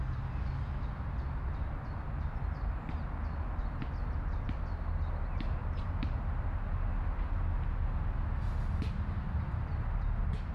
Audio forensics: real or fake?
real